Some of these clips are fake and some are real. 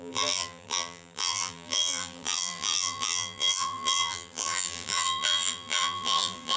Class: fake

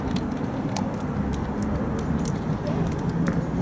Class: real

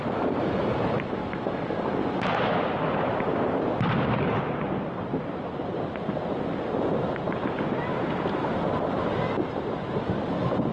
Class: real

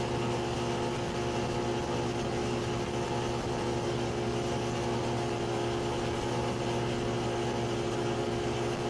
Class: real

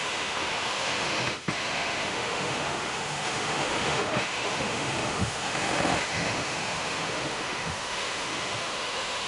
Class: fake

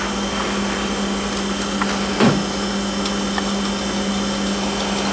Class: real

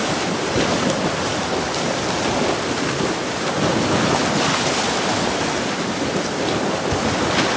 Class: real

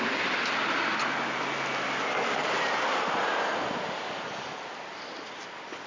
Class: real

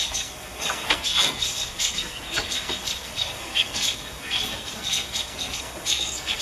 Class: fake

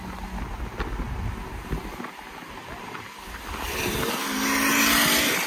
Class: real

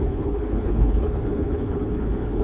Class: fake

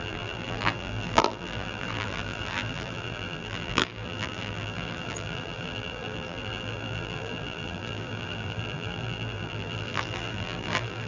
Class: fake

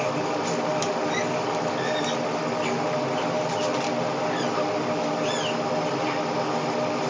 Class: real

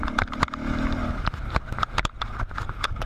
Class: real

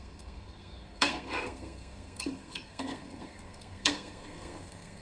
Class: fake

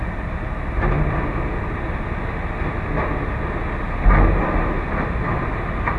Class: real